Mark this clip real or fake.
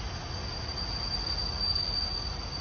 real